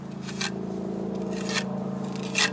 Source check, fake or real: real